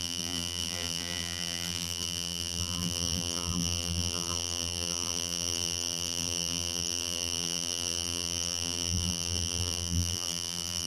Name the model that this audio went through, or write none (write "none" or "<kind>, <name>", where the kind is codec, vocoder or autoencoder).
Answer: vocoder, BigVGAN v2